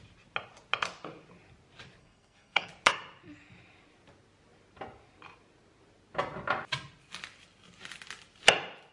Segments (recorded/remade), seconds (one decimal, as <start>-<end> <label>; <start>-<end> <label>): 0.0-2.0 recorded; 2.0-2.7 remade; 2.7-8.9 recorded